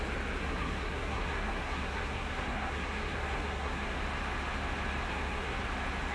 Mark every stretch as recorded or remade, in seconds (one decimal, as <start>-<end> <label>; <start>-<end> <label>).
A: 0.0-0.4 recorded; 0.4-4.0 remade; 4.0-5.1 recorded; 5.1-5.6 remade; 5.6-6.1 recorded